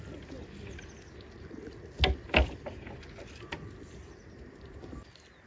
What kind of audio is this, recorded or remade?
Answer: recorded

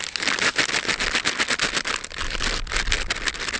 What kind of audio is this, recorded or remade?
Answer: recorded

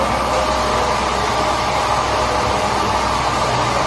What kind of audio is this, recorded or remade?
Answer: recorded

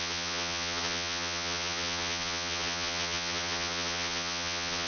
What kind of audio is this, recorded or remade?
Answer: remade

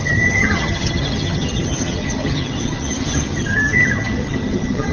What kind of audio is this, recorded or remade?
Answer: remade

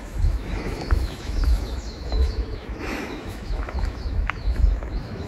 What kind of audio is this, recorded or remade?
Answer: remade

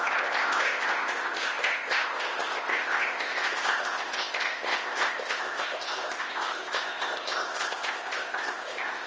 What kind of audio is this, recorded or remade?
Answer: remade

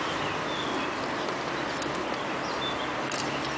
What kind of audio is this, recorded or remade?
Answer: recorded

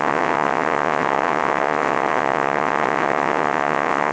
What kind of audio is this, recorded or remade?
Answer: remade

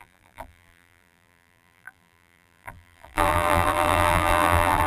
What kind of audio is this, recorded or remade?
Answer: remade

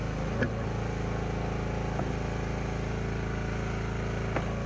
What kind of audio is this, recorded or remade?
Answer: recorded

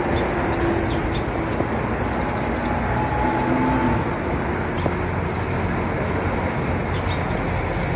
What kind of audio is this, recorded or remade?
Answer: recorded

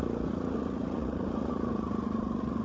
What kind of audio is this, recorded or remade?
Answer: remade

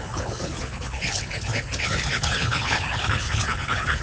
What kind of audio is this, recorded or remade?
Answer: remade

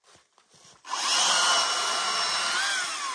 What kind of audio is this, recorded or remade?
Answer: recorded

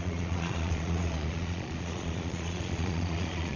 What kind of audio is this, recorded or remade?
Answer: remade